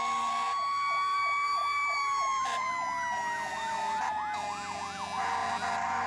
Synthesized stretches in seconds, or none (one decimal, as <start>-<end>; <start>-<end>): 1.1-2.7; 3.5-4.1